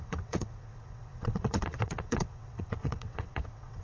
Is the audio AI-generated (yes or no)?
yes